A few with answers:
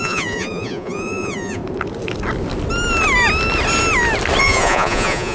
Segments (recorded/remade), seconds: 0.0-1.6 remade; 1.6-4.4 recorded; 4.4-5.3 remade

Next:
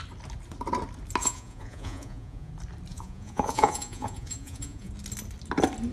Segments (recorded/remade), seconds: 0.0-1.2 recorded; 1.2-2.5 remade; 2.5-2.9 recorded; 2.9-4.9 remade; 4.9-5.9 recorded

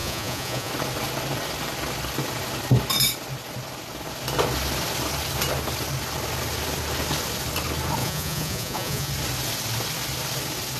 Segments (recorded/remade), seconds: 0.0-0.7 remade; 0.7-8.0 recorded; 8.0-9.1 remade; 9.1-10.8 recorded

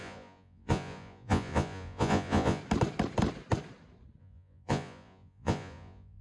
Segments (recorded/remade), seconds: 0.0-2.6 remade; 2.6-4.2 recorded; 4.2-6.2 remade

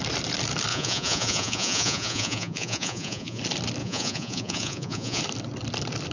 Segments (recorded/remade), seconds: 0.0-0.7 recorded; 0.7-3.4 remade; 3.4-3.8 recorded; 3.8-5.2 remade; 5.2-6.1 recorded

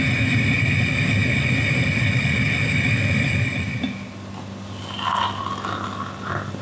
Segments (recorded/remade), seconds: 0.0-6.6 recorded

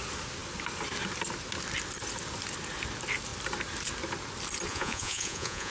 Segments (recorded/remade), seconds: 0.0-4.7 recorded; 4.7-5.7 remade